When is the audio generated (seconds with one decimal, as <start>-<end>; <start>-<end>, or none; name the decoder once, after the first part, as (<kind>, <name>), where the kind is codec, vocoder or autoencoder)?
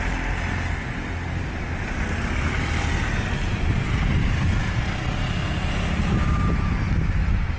none